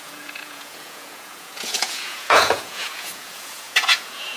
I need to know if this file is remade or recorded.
remade